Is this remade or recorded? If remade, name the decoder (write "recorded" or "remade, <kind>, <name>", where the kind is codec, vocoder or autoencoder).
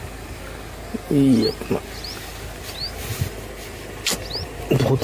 recorded